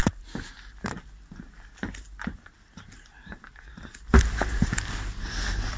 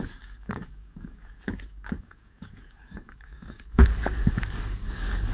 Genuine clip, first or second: first